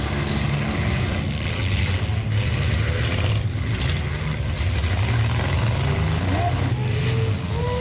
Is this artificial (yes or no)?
no